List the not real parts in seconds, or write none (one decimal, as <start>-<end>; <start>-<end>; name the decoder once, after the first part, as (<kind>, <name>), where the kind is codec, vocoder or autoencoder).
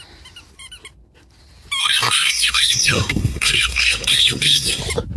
1.8-4.8 (codec, SNAC)